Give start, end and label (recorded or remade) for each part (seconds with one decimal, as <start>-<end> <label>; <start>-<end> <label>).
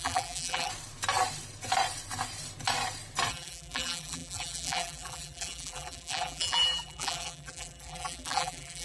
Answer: 0.0-0.7 remade; 0.7-3.3 recorded; 3.3-8.8 remade